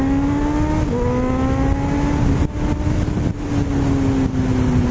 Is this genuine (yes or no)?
yes